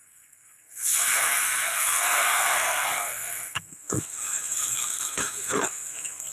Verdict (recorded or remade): remade